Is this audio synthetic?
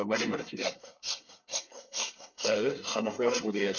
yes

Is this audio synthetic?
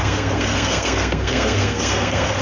yes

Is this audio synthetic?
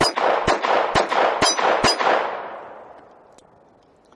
no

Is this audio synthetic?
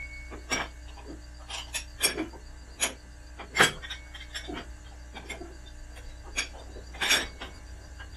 no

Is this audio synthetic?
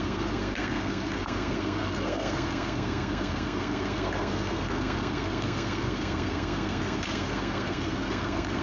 yes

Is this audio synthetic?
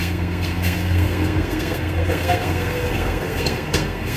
yes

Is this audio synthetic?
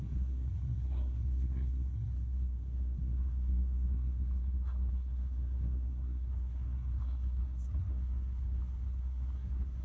yes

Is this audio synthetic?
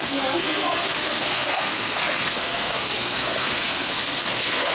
yes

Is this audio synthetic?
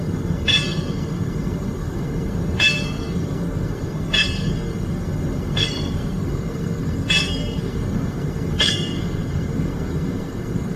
yes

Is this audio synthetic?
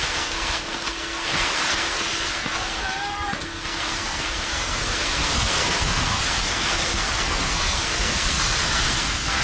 yes